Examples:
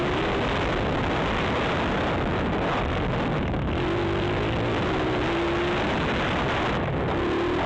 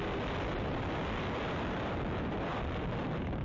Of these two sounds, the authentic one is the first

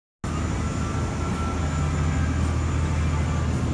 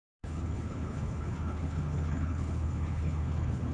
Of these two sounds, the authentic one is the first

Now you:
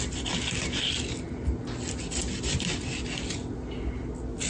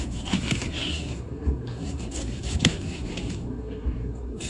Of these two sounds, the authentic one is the first